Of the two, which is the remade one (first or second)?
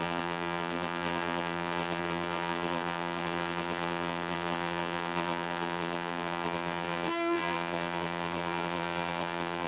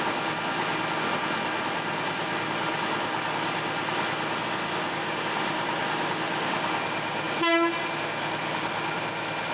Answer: first